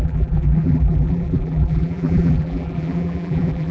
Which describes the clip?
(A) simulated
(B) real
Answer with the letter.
A